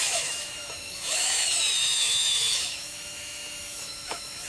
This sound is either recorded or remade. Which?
remade